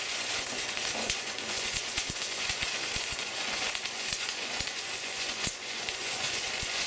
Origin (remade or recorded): remade